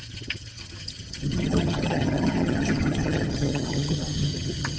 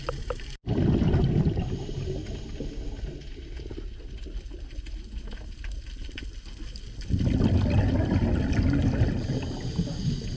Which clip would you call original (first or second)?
second